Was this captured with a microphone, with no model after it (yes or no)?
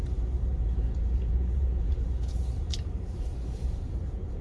no